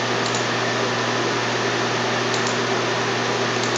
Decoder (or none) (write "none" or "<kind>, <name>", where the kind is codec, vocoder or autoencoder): none